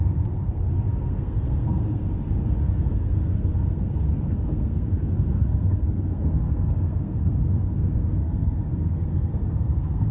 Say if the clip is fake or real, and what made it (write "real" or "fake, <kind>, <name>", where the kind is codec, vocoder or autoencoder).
fake, codec, SNAC